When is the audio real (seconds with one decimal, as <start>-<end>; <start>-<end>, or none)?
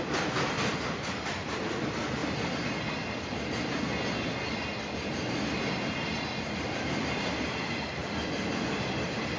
0.7-1.6; 2.2-6.8; 8.0-8.6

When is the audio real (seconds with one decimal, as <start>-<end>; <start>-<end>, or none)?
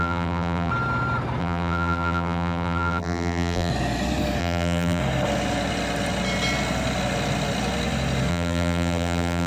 0.7-1.4; 3.7-4.4; 5.0-8.3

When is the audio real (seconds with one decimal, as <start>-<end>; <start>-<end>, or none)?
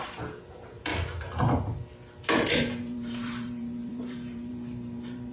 0.9-2.5